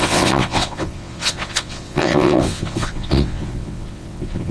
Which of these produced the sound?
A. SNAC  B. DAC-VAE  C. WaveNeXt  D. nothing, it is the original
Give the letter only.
C